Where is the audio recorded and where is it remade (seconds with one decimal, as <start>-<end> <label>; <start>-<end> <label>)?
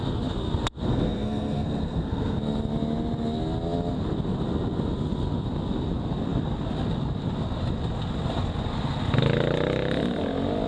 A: 0.0-0.9 recorded; 0.9-2.4 remade; 2.4-10.7 recorded